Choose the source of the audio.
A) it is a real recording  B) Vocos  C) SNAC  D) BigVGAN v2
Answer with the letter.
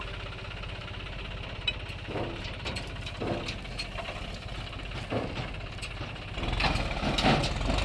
A